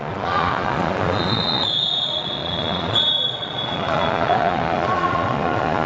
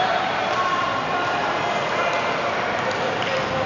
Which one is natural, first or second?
second